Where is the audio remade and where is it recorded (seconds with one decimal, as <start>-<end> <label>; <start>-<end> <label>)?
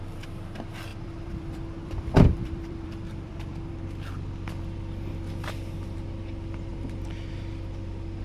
0.0-0.9 recorded; 0.9-3.7 remade; 3.7-8.2 recorded